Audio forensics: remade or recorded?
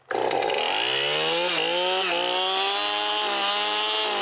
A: recorded